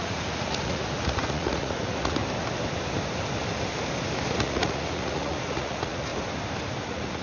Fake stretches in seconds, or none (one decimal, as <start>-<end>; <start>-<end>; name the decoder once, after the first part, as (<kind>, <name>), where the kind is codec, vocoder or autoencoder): 0.0-2.2 (vocoder, Vocos); 4.4-6.1; 6.8-7.2